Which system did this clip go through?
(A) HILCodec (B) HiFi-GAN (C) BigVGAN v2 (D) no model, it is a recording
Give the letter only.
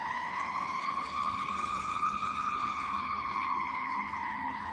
A